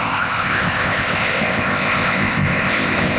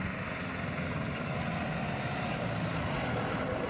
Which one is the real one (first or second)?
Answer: second